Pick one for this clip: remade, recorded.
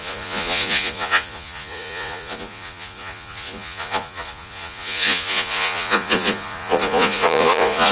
remade